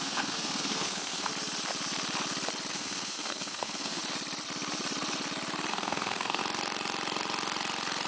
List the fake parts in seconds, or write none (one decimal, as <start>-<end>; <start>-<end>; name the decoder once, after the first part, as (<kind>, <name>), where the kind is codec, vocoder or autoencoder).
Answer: 0.0-1.3 (codec, SNAC); 2.7-4.0; 5.7-6.4